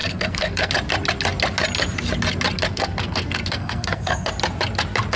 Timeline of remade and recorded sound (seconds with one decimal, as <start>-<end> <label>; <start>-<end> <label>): 0.0-0.7 remade; 0.7-2.7 recorded; 2.7-4.3 remade; 4.3-5.2 recorded